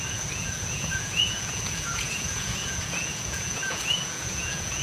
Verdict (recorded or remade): remade